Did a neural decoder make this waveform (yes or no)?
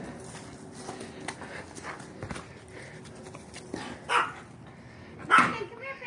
no